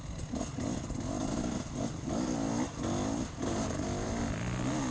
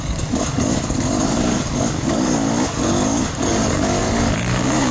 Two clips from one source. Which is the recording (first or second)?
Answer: first